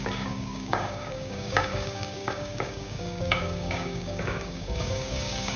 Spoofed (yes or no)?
yes